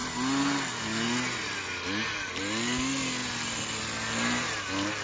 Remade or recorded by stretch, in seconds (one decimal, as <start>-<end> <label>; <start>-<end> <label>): 0.0-5.0 recorded